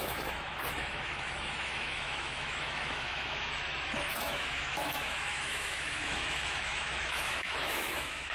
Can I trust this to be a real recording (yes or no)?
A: no